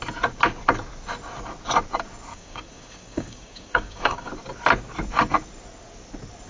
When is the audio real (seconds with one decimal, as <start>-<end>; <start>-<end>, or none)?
0.0-2.3; 4.3-6.5